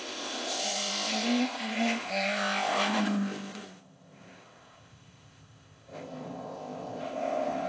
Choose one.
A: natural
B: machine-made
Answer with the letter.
B